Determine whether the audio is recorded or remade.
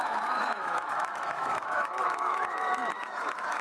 remade